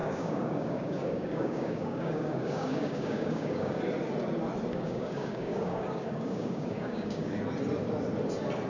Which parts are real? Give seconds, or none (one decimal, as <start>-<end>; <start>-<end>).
3.8-4.7; 7.4-8.7